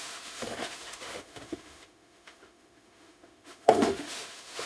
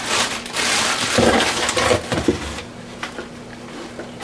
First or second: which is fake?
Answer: first